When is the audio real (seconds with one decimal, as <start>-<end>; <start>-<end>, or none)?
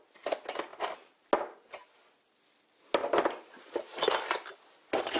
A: 0.0-5.2